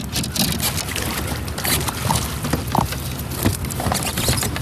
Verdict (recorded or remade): recorded